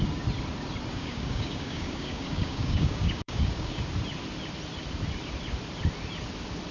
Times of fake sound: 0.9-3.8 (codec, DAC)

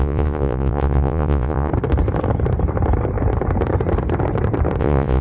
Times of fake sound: 0.0-1.7 (vocoder, Vocos); 4.8-5.2

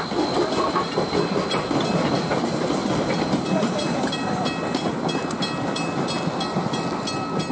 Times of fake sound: none

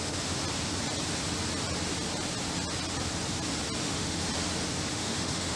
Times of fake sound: 0.0-0.4 (autoencoder, DAC-VAE); 3.8-4.3; 4.9-5.6

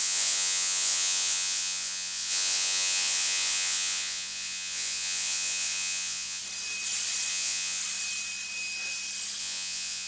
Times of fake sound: 0.0-6.4 (vocoder, Vocos); 7.3-7.8; 9.4-10.1

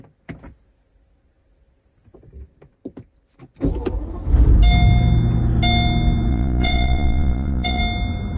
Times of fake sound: 6.3-7.8 (vocoder, Vocos)

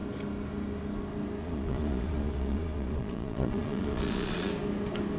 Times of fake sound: 1.4-4.5 (vocoder, Vocos)